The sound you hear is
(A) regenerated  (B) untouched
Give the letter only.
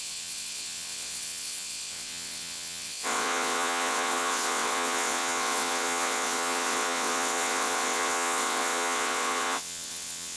A